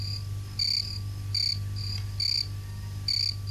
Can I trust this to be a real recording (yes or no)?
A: yes